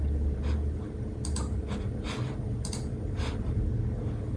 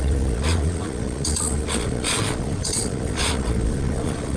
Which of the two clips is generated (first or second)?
second